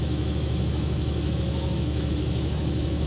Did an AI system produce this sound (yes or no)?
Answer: yes